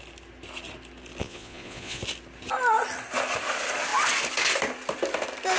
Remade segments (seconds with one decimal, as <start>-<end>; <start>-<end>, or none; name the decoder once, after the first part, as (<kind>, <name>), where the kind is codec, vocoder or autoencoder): 1.2-2.0 (vocoder, Vocos)